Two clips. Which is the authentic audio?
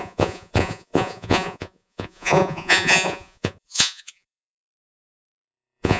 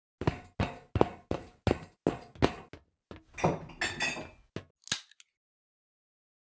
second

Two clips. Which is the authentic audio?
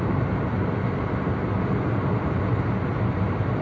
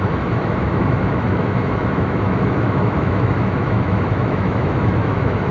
first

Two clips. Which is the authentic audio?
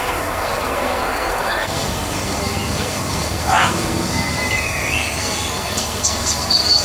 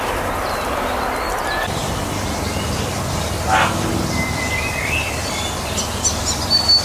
second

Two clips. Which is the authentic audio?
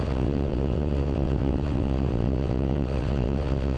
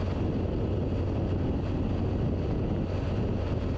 second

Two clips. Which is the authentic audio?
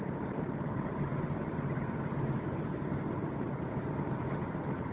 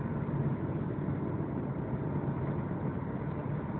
second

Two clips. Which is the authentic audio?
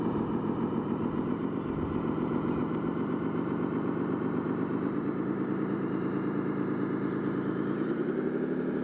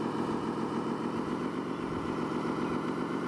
second